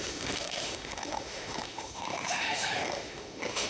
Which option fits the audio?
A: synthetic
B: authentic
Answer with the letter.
A